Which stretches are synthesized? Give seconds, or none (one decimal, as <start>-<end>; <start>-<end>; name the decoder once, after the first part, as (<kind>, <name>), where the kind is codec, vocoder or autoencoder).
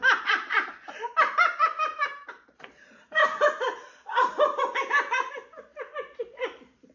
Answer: 0.0-6.9 (vocoder, BigVGAN v2)